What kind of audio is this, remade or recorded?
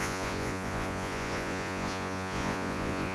remade